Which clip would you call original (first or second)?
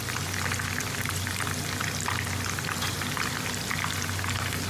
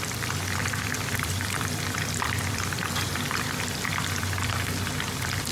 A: first